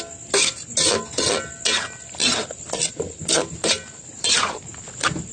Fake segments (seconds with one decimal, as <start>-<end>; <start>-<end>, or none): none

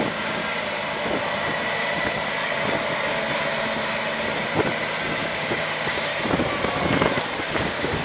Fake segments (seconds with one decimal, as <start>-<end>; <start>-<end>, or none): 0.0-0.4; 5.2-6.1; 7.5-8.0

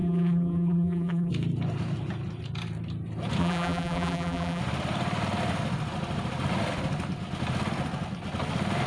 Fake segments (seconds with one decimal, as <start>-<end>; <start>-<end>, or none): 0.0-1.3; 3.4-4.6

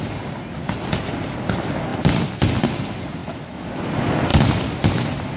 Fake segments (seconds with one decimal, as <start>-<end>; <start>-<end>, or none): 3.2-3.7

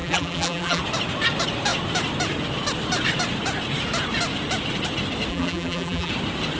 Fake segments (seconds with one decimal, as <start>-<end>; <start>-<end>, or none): 0.0-0.8; 5.3-6.1

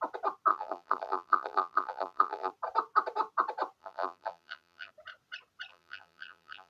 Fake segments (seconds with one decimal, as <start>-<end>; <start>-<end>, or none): 0.5-2.5; 3.8-4.9; 5.7-6.7